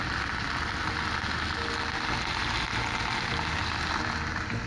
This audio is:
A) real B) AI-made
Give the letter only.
A